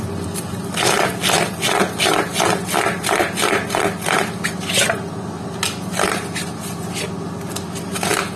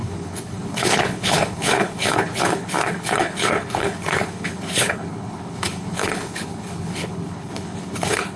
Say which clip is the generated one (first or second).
second